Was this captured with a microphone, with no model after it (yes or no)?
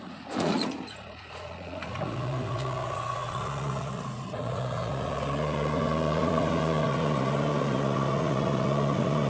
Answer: no